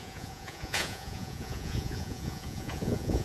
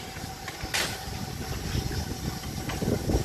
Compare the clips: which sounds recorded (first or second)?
second